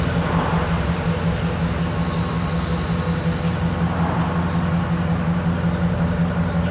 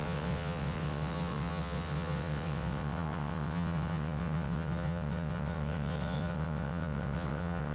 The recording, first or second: first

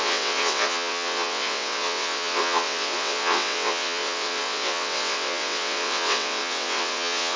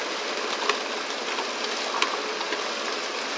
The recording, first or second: second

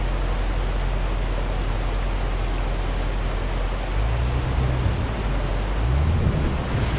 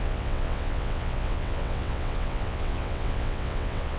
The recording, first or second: first